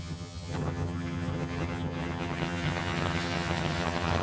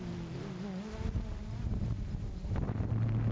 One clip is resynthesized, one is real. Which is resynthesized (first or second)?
first